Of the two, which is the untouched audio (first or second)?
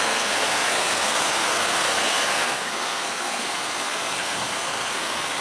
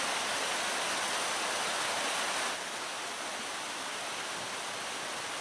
second